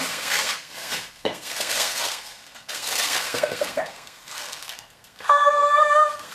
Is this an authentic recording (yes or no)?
no